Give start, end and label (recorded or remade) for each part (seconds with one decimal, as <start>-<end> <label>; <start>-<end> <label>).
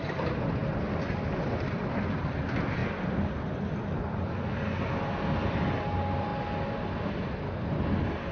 0.0-8.3 recorded